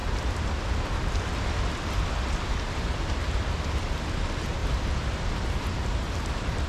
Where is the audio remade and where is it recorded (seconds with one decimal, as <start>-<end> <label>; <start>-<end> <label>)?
0.0-4.0 remade; 4.0-4.6 recorded; 4.6-5.5 remade; 5.5-6.7 recorded